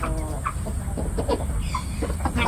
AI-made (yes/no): no